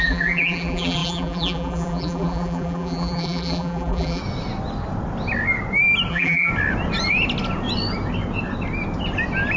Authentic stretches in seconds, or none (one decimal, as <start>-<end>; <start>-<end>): 4.2-6.1; 6.5-9.6